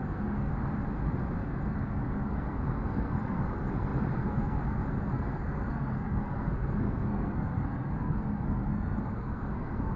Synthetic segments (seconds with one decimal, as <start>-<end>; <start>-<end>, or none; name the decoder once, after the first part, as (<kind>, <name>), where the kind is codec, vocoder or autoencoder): 0.0-0.5 (codec, SNAC); 1.4-10.0